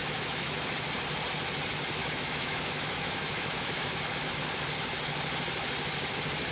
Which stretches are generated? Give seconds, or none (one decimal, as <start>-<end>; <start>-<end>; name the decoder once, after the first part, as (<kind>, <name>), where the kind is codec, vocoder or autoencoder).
0.0-0.7 (autoencoder, DAC-VAE); 2.0-4.4